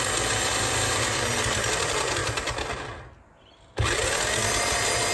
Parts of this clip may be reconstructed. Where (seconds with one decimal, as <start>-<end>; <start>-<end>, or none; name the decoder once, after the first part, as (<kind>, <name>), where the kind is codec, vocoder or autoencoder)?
none